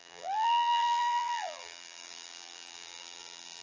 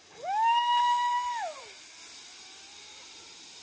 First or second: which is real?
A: second